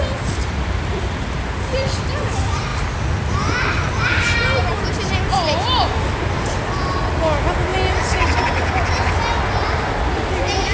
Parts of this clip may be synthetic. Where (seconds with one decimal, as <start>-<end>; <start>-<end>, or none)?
none